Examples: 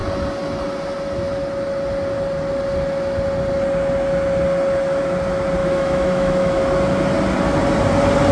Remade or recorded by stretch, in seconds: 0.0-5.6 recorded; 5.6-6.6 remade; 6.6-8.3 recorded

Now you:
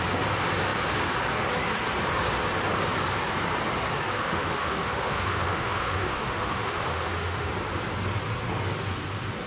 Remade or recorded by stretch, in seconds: 0.0-4.1 recorded; 4.1-7.5 remade; 7.5-9.5 recorded

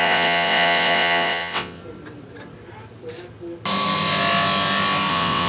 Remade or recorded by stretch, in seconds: 0.0-1.8 remade; 1.8-5.1 recorded; 5.1-5.5 remade

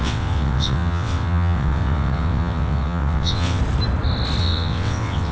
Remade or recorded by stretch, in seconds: 0.0-3.6 remade; 3.6-4.4 recorded; 4.4-5.3 remade

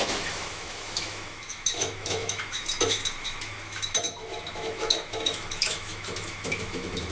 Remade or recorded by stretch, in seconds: 0.0-7.1 remade